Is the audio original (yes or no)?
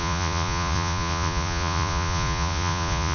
no